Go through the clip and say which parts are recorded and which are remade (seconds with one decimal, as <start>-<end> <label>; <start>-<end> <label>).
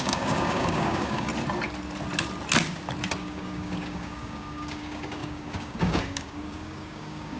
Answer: 0.0-1.3 remade; 1.3-3.2 recorded; 3.2-7.4 remade